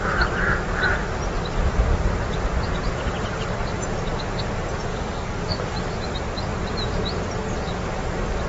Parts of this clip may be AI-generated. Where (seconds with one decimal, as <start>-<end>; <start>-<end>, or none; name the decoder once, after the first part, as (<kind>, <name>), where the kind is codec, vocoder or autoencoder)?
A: 4.9-5.6 (codec, DAC)